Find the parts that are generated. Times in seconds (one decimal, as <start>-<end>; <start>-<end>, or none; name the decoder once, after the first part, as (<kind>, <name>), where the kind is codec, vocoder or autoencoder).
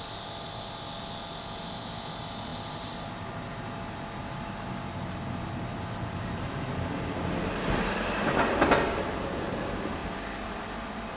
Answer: none